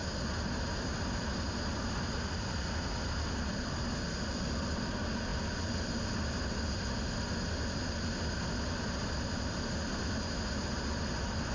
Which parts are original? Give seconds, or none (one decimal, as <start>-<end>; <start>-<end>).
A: 0.0-11.5